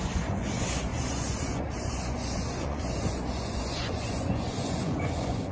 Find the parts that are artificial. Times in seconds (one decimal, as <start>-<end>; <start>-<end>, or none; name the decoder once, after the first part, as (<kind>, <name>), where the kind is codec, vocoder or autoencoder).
0.0-5.5 (vocoder, Vocos)